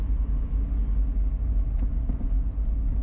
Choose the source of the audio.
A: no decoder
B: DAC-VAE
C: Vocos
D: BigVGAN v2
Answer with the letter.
A